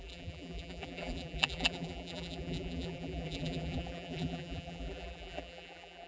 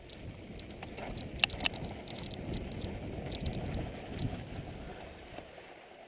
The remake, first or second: first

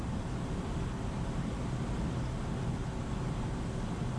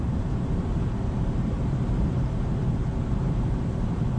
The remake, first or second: second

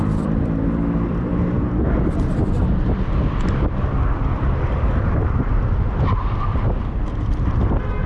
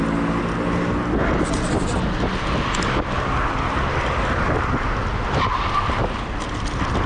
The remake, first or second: first